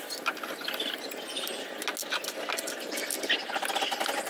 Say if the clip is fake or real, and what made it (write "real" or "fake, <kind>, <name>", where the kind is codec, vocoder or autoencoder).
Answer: real